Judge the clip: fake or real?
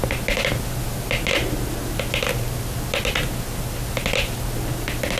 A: real